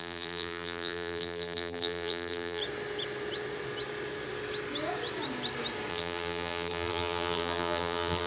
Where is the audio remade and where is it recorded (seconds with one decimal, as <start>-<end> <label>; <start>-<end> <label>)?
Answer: 0.0-2.6 remade; 2.6-5.9 recorded; 5.9-8.3 remade